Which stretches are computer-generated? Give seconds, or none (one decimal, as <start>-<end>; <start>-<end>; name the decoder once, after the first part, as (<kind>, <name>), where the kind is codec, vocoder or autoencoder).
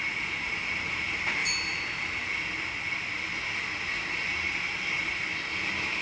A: none